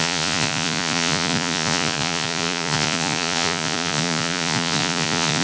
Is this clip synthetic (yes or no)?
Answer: yes